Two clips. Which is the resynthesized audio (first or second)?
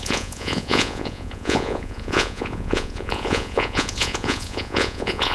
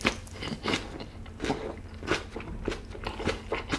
first